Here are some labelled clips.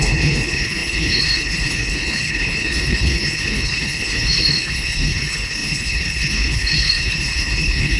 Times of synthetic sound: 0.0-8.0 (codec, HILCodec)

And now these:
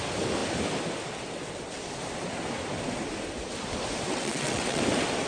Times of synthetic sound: 4.1-4.8 (vocoder, WaveNeXt)

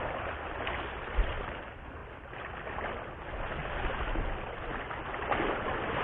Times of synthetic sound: none

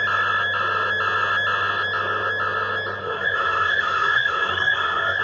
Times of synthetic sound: 3.0-5.2 (codec, SNAC)

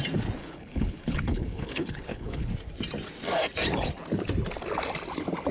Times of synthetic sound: 0.4-2.5 (codec, HILCodec)

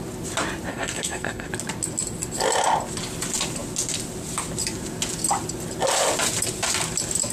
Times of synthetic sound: 0.7-1.5 (codec, SNAC)